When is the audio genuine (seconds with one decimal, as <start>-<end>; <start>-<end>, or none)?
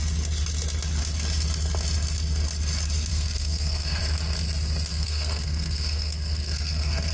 0.0-3.1; 4.0-4.9